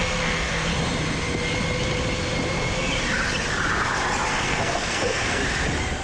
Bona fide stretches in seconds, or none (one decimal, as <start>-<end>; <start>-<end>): 0.7-4.3; 5.4-6.0